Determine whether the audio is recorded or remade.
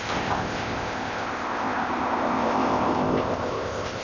remade